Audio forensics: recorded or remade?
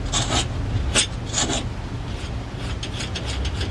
recorded